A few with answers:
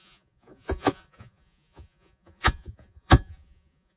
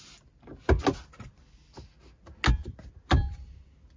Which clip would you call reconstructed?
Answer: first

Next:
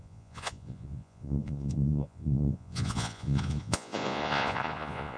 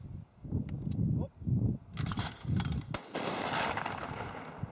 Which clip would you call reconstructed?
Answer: first